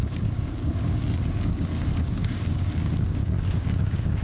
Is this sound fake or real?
fake